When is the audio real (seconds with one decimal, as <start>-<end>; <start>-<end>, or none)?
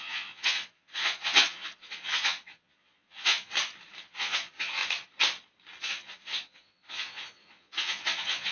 3.5-4.0; 4.8-5.8